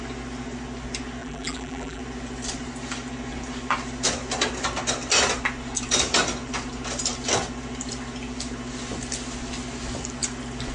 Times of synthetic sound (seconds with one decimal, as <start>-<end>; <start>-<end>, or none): 1.2-2.0